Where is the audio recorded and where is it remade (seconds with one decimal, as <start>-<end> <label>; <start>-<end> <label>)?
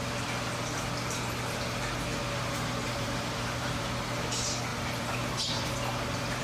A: 0.0-2.2 recorded; 2.2-3.9 remade; 3.9-4.7 recorded; 4.7-6.4 remade